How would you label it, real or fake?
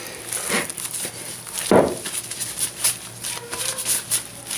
fake